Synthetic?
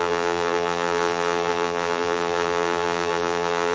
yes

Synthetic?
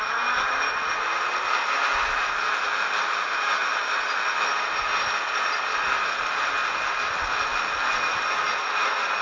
no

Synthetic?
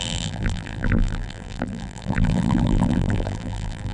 yes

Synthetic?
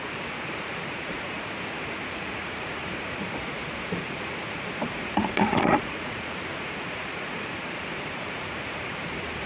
yes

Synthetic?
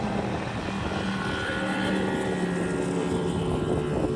no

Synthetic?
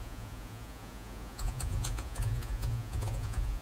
yes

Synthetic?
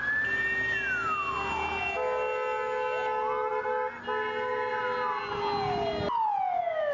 no